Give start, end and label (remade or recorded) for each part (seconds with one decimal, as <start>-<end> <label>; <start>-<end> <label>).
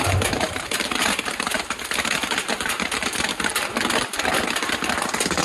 0.0-3.5 remade; 3.5-5.4 recorded